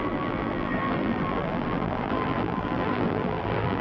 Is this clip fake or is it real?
fake